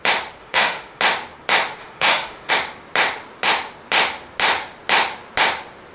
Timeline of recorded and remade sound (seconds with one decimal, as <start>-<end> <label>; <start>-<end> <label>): 0.0-0.4 recorded; 0.4-1.0 remade; 1.0-1.8 recorded; 1.8-2.5 remade; 2.5-5.9 recorded